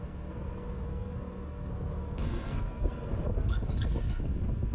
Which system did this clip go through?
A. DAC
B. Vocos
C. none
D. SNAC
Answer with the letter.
D